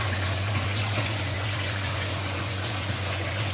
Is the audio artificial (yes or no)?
yes